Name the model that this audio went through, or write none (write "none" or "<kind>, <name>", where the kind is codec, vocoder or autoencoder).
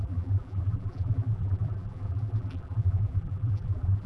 vocoder, BigVGAN v2